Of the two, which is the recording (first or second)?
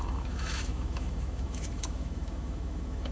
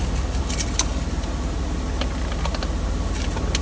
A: second